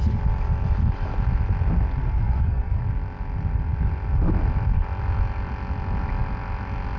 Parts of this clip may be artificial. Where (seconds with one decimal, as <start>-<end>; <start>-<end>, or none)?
2.0-2.8